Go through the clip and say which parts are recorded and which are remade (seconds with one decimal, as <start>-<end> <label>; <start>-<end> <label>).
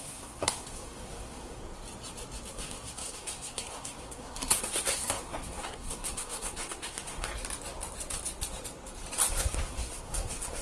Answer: 0.0-1.6 remade; 1.6-2.5 recorded; 2.5-7.3 remade; 7.3-9.3 recorded; 9.3-10.6 remade